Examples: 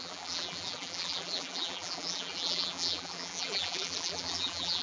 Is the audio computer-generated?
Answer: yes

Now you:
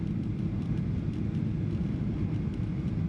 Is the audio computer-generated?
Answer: no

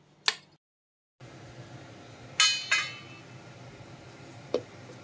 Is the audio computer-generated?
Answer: no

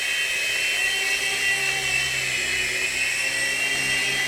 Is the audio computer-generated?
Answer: no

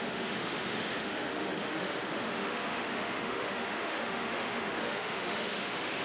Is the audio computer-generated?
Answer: yes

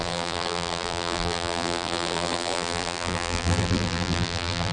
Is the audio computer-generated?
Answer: yes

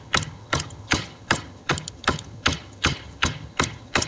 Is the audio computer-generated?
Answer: yes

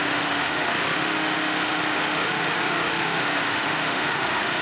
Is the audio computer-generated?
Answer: yes